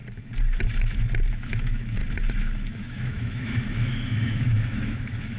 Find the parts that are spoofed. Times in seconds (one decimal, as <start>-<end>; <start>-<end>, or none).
1.3-2.0; 2.7-5.4